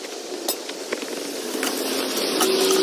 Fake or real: real